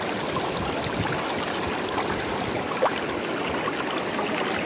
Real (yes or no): yes